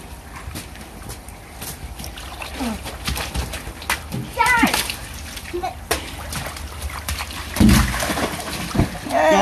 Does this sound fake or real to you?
real